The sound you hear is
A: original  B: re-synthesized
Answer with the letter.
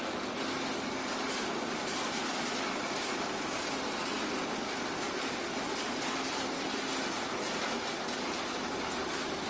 A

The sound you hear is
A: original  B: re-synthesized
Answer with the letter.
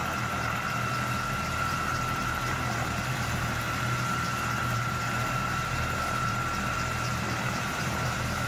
B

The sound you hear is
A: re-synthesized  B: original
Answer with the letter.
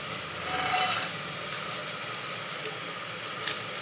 B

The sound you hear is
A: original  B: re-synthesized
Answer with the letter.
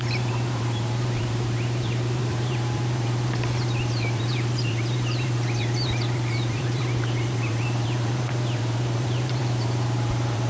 B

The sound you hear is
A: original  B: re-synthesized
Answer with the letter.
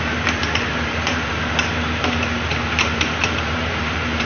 B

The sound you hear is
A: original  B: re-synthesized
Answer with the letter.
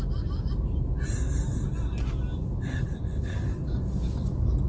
A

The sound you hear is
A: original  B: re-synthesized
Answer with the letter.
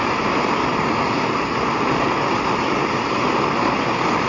B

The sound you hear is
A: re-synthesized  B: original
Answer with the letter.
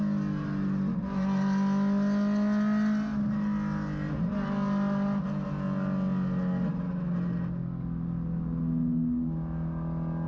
B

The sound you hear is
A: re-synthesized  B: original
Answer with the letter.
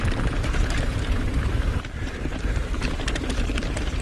A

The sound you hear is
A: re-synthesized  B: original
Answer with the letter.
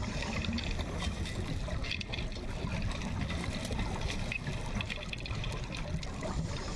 B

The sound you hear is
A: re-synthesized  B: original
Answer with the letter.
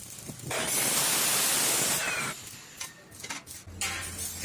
B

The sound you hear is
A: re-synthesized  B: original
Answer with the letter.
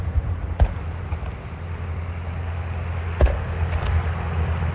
B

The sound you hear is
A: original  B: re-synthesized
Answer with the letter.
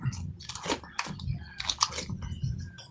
A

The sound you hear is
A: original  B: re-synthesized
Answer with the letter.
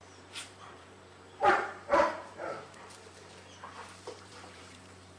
B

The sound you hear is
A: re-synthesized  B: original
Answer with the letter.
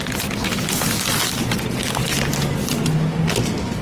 B